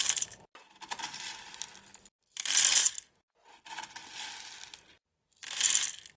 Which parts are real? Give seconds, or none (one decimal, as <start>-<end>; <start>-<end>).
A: 0.0-6.2